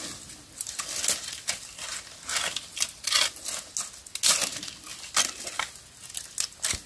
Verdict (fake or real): real